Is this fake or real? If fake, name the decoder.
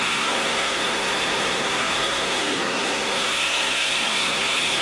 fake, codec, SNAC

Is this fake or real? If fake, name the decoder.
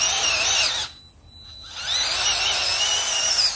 real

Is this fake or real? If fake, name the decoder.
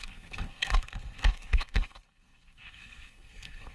fake, codec, SNAC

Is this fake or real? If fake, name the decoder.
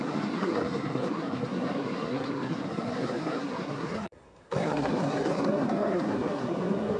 fake, codec, SNAC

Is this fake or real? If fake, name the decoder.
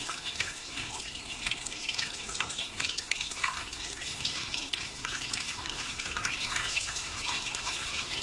fake, codec, SNAC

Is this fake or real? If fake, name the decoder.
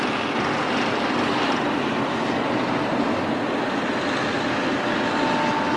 real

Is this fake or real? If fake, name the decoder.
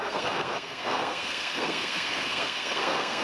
fake, codec, SNAC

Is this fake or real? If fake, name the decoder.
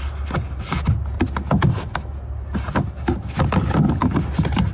real